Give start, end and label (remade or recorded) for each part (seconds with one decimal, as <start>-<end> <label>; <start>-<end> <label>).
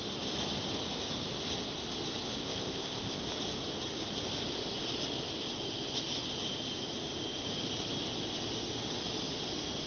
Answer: 0.0-2.4 recorded; 2.4-3.2 remade; 3.2-9.9 recorded